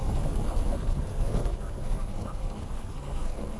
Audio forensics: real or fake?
fake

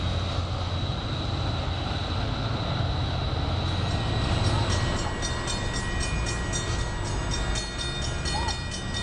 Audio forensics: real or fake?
real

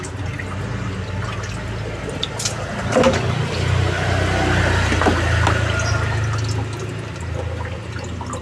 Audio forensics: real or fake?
real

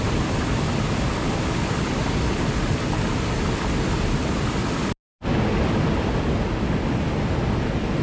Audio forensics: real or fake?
real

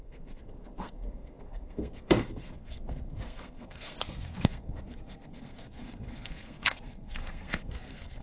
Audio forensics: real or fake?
fake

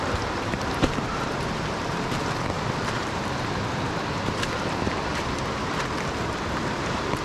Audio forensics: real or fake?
fake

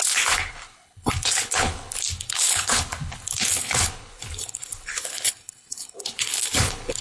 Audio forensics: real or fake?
fake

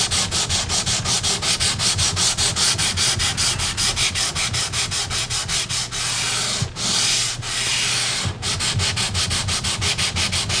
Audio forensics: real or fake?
real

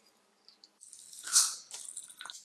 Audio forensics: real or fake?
real